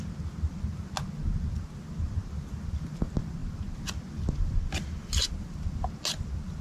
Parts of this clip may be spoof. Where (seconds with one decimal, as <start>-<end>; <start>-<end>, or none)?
none